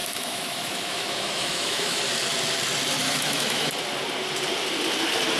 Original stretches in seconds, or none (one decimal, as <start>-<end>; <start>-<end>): 2.0-3.0; 3.7-5.4